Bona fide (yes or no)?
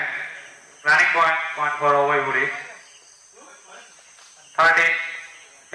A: yes